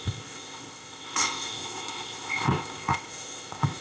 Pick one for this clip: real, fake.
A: fake